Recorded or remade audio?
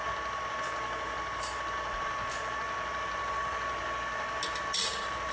recorded